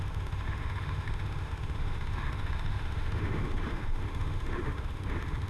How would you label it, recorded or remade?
remade